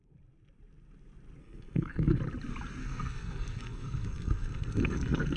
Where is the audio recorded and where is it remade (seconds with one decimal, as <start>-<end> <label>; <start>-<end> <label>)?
0.0-1.4 recorded; 1.4-2.2 remade; 2.2-2.8 recorded; 2.8-5.4 remade